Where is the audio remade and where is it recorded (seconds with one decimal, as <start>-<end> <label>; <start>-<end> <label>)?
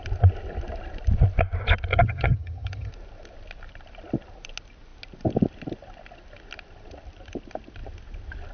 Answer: 0.0-1.9 recorded; 1.9-2.9 remade; 2.9-8.5 recorded